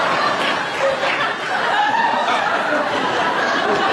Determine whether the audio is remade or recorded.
recorded